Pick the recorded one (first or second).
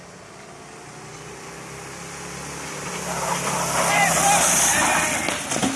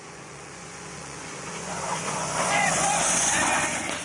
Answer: first